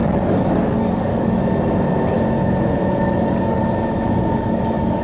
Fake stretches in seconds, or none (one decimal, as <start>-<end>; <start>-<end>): 0.0-1.4; 2.9-3.6; 4.2-5.0